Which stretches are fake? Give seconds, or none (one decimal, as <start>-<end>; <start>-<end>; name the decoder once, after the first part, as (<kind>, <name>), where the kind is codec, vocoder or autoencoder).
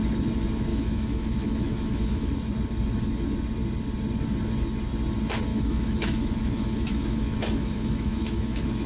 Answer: 0.7-2.3 (autoencoder, DAC-VAE); 5.5-8.9